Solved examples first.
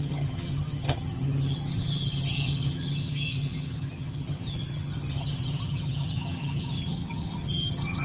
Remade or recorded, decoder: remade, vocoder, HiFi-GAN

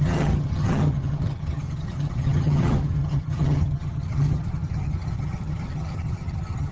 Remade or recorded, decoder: remade, vocoder, HiFi-GAN